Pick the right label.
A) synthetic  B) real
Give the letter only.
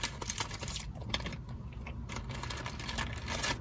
B